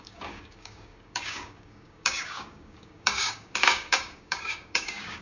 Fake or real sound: fake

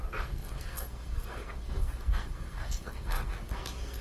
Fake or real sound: fake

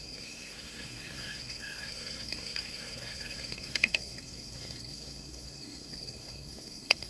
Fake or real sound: fake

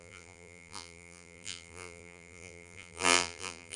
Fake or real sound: fake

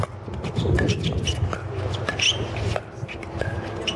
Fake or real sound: real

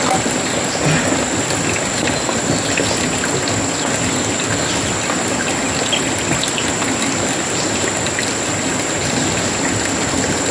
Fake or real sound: real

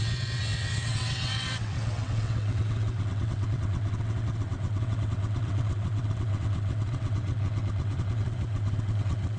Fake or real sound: fake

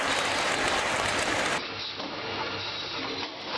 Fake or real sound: real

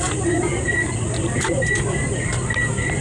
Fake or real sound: real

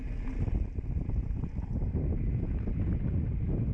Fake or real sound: real